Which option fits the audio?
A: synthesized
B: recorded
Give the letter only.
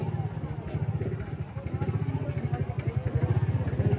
B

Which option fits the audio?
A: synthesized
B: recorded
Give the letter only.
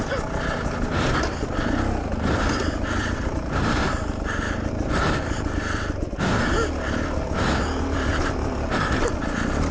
B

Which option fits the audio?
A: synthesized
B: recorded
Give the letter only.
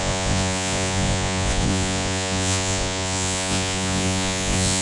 A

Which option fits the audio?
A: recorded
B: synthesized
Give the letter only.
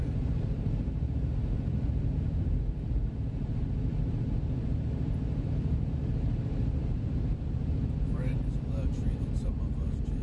B